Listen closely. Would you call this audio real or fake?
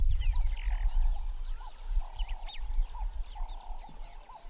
real